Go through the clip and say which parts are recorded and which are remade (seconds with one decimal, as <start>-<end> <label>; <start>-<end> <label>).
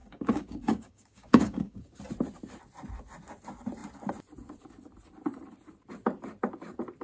0.0-2.0 remade; 2.0-7.0 recorded